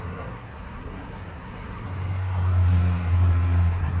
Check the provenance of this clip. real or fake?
fake